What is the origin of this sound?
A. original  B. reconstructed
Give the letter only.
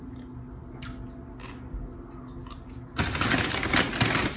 A